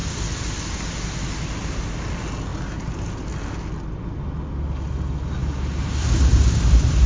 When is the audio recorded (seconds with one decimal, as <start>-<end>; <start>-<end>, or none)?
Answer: 0.0-2.5; 3.3-5.4; 6.1-7.1